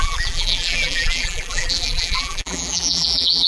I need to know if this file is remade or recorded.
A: remade